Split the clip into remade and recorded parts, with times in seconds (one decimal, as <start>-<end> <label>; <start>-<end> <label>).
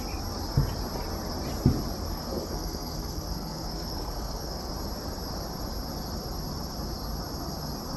0.0-2.1 recorded; 2.1-4.7 remade; 4.7-8.0 recorded